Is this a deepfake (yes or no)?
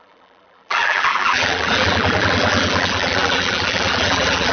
yes